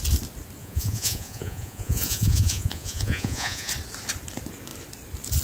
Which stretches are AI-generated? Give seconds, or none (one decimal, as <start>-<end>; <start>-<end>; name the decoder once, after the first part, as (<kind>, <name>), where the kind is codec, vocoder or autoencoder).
0.6-3.7 (vocoder, Vocos)